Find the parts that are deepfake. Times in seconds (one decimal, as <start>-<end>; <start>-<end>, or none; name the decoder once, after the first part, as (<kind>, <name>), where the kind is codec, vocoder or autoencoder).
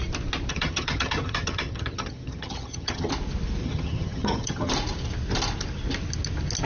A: 0.5-3.1 (vocoder, HiFi-GAN); 3.6-4.7